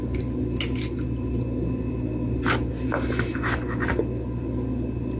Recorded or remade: recorded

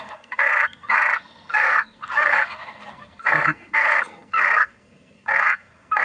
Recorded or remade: remade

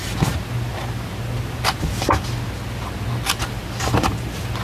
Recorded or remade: recorded